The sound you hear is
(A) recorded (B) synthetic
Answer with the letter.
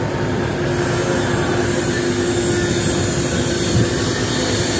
A